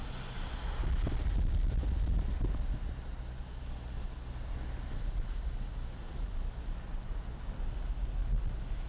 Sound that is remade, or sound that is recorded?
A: recorded